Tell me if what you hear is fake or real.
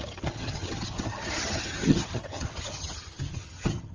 fake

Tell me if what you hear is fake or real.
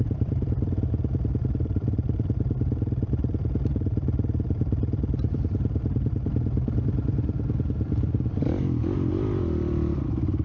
fake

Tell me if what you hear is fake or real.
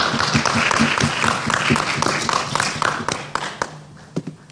real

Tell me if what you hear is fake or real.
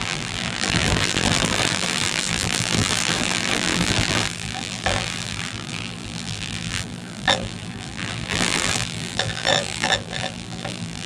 fake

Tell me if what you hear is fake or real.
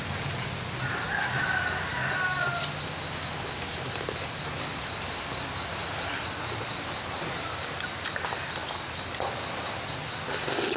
real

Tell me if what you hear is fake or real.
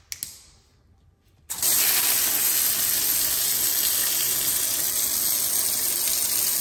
real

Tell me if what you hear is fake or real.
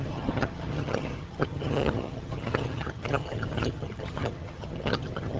fake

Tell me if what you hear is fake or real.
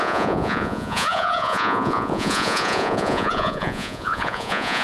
fake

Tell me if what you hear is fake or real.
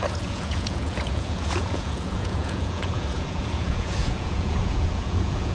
fake